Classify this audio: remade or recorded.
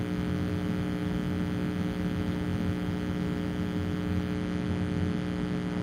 recorded